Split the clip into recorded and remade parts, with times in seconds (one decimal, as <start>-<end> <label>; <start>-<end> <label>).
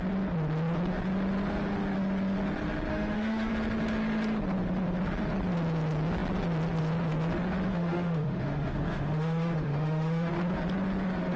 0.0-2.9 recorded; 2.9-3.5 remade; 3.5-7.7 recorded; 7.7-10.3 remade; 10.3-11.4 recorded